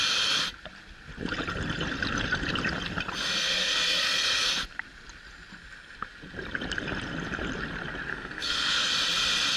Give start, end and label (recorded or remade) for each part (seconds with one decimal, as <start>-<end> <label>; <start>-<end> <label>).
0.0-3.4 recorded; 3.4-4.6 remade; 4.6-8.1 recorded; 8.1-8.9 remade; 8.9-9.6 recorded